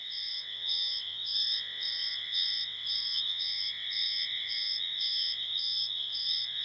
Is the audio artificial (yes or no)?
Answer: yes